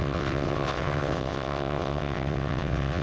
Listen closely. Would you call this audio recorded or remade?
remade